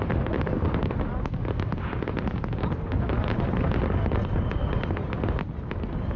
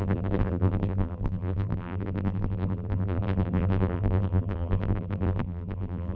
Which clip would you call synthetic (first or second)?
second